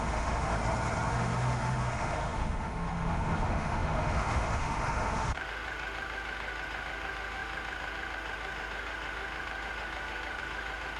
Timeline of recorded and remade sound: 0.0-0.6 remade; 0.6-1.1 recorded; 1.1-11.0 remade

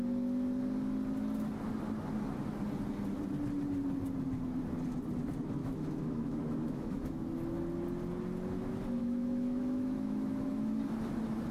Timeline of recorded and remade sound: 0.0-5.6 recorded; 5.6-7.3 remade; 7.3-9.0 recorded; 9.0-10.8 remade; 10.8-11.5 recorded

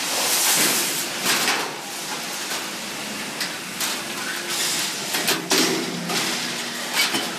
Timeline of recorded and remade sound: 0.0-7.4 recorded

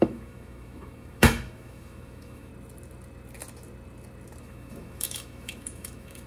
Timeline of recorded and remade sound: 0.0-2.5 remade; 2.5-4.4 recorded; 4.4-6.3 remade

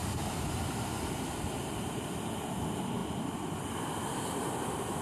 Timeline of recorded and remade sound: 0.0-5.0 recorded